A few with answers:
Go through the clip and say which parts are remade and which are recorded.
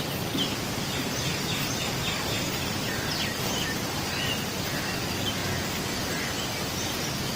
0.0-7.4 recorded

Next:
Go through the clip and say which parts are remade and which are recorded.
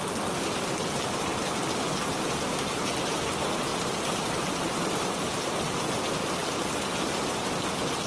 0.0-3.7 recorded; 3.7-4.4 remade; 4.4-8.1 recorded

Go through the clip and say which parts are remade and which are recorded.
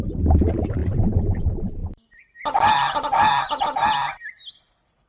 0.0-0.8 recorded; 0.8-1.4 remade; 1.4-5.1 recorded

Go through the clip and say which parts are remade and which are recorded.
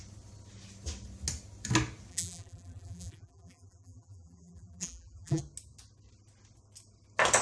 0.0-2.1 recorded; 2.1-5.4 remade; 5.4-7.4 recorded